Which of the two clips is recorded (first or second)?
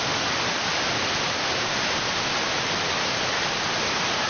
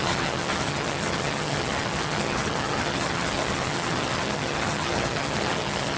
first